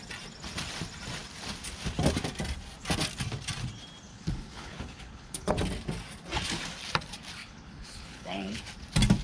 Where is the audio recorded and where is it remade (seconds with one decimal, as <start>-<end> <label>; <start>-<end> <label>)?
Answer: 0.0-4.1 recorded; 4.1-5.5 remade; 5.5-7.4 recorded; 7.4-8.6 remade; 8.6-9.2 recorded